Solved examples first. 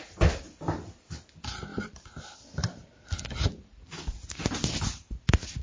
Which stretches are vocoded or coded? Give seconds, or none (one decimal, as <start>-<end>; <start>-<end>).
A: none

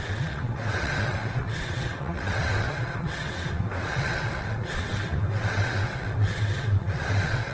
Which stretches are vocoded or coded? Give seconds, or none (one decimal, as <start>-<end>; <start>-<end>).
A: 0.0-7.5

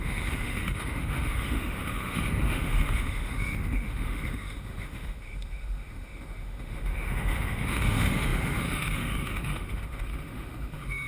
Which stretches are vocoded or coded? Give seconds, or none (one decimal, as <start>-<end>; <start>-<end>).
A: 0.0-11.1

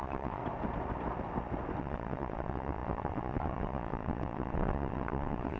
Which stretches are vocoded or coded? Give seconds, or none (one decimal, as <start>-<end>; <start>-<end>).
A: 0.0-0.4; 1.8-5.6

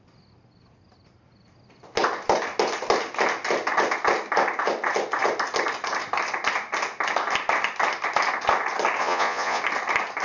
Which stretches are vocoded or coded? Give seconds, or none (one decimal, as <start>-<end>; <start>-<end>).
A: 9.0-9.6